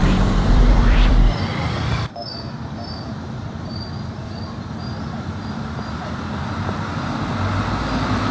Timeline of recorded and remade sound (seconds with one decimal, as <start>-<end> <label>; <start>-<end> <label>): 0.0-4.4 remade; 4.4-8.3 recorded